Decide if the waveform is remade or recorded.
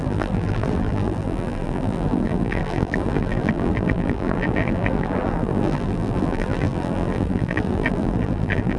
remade